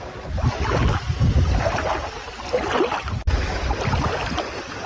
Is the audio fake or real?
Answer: real